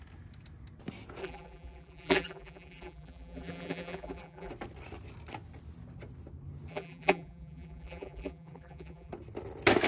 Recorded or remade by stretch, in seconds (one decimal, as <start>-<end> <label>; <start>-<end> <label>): 0.0-1.2 recorded; 1.2-4.5 remade; 4.5-6.7 recorded; 6.7-9.1 remade; 9.1-9.9 recorded